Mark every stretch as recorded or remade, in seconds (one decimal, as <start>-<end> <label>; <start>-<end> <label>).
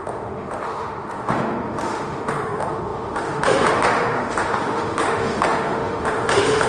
0.0-6.7 remade